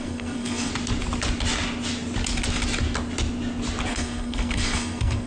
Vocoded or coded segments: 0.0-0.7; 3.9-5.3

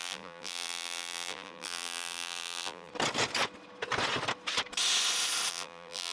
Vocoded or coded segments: 0.0-2.9; 5.5-6.1

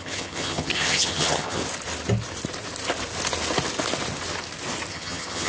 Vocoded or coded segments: 0.0-1.6; 4.9-5.5